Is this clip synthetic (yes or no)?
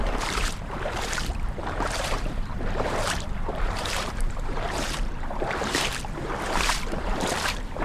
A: yes